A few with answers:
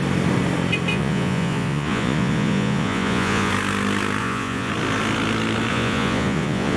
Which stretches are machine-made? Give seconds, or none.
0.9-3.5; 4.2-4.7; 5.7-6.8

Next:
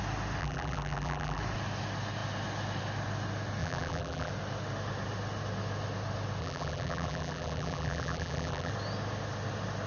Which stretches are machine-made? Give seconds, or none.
0.4-1.4; 3.6-4.3; 6.4-8.7

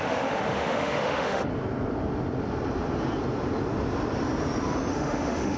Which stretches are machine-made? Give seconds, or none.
0.0-1.5; 4.9-5.6

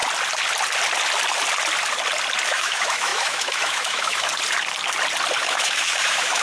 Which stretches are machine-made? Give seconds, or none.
2.5-4.3; 5.4-6.4

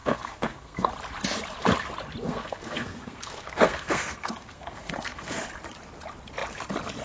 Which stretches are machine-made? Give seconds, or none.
0.0-0.9; 2.2-5.4

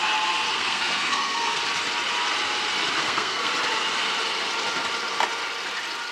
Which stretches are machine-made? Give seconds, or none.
0.5-1.6; 3.0-3.5

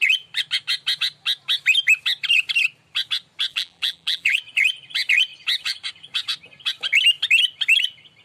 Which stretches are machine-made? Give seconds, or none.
3.5-4.4

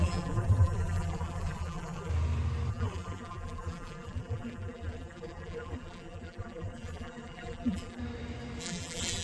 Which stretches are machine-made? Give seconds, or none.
0.0-2.1; 2.7-8.0; 8.6-9.2